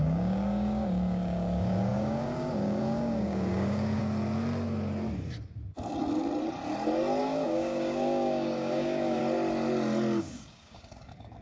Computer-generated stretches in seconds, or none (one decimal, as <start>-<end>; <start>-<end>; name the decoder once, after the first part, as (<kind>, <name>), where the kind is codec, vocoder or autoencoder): 0.0-4.0 (codec, DAC); 7.2-9.2; 10.2-11.4